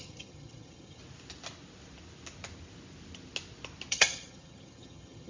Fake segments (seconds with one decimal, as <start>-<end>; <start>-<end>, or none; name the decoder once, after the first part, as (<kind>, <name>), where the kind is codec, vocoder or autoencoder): 0.0-1.0 (vocoder, HiFi-GAN); 3.9-5.3